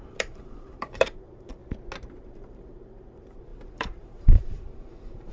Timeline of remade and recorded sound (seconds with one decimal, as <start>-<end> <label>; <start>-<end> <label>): 0.0-1.6 remade; 1.6-2.2 recorded; 2.2-5.3 remade